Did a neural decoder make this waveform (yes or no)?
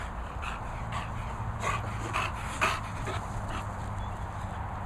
no